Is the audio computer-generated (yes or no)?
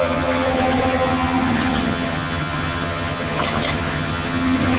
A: yes